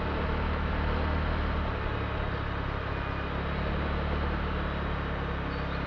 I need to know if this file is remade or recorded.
recorded